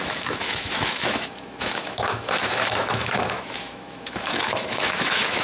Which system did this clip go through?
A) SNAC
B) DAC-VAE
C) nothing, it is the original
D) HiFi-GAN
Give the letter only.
B